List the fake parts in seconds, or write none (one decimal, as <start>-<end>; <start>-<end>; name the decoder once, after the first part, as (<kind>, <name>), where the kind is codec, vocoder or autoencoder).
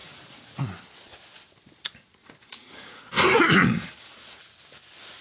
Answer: 0.0-0.6 (vocoder, Vocos); 2.2-4.4